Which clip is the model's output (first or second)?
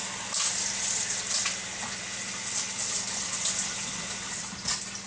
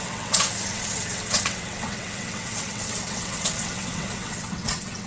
second